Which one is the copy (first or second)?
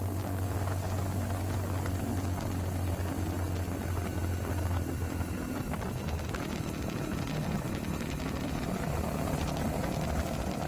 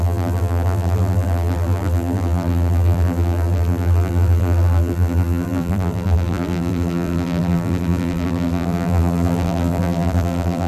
second